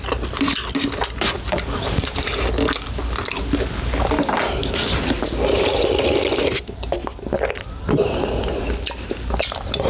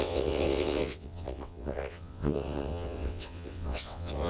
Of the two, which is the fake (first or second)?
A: second